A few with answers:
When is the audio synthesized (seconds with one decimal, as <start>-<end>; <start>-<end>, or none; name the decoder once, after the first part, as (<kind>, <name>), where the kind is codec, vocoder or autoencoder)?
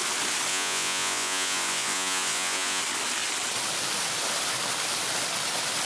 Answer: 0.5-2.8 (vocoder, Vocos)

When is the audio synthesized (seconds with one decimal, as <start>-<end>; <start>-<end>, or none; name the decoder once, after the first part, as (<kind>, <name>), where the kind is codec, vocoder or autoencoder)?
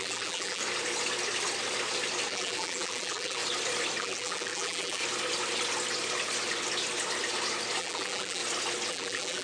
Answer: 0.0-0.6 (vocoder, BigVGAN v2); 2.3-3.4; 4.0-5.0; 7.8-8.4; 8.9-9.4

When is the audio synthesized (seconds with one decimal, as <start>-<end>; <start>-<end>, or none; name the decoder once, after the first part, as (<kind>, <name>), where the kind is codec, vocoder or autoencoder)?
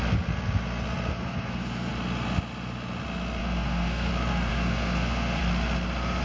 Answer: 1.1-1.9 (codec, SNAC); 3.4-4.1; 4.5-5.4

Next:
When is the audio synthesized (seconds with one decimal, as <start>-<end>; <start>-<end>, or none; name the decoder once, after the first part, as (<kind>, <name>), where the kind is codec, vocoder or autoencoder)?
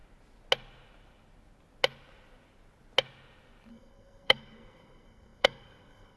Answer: 3.7-6.2 (codec, SNAC)